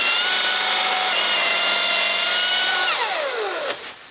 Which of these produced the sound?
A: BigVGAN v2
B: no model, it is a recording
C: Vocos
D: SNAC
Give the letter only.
B